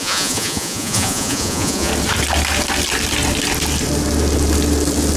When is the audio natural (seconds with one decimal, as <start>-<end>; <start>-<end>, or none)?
1.9-5.2